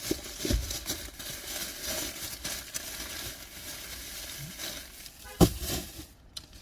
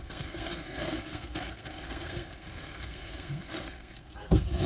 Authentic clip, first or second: first